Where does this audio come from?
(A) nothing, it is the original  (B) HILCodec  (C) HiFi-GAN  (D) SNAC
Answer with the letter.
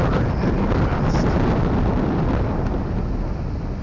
A